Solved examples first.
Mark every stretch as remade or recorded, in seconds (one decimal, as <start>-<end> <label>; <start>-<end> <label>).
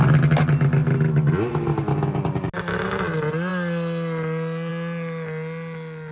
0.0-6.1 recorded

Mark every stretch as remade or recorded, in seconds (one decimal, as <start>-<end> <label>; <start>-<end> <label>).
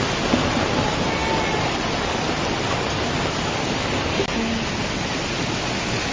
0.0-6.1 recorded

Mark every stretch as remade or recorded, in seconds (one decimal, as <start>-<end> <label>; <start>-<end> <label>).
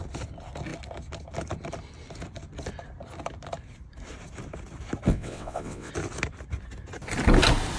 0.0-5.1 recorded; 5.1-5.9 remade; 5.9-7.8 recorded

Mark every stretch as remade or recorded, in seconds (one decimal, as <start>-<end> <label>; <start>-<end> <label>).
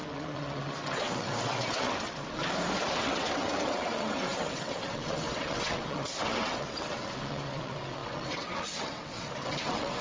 0.0-2.4 remade; 2.4-2.9 recorded; 2.9-10.0 remade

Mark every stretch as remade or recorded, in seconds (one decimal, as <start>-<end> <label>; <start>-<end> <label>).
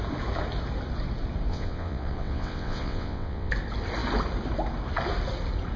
0.0-1.5 recorded; 1.5-3.5 remade; 3.5-5.8 recorded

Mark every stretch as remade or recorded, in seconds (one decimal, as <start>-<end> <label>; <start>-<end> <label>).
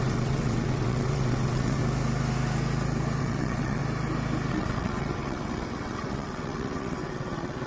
0.0-1.8 remade; 1.8-3.2 recorded; 3.2-3.8 remade; 3.8-4.5 recorded; 4.5-7.7 remade